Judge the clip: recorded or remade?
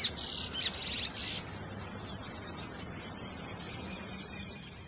recorded